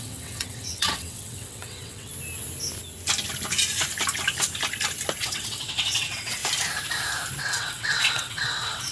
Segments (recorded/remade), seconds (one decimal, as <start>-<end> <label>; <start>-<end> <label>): 0.0-2.1 remade; 2.1-5.2 recorded; 5.2-6.4 remade; 6.4-7.4 recorded; 7.4-8.9 remade